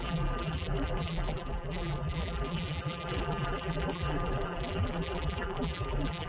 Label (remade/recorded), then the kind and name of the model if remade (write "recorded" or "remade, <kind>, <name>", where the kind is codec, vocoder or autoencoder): remade, vocoder, BigVGAN v2